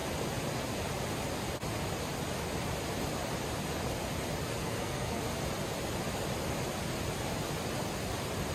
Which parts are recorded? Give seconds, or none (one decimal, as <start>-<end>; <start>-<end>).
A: 0.0-4.6; 5.2-8.5